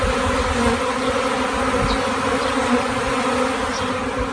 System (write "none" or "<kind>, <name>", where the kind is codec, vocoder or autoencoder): none